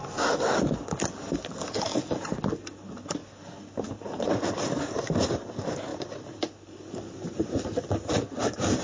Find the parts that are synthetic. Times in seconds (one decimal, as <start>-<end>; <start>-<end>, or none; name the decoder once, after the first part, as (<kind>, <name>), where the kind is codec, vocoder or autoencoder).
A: none